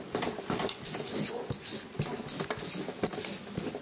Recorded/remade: recorded